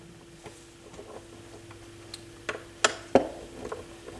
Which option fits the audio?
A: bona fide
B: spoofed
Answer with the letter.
A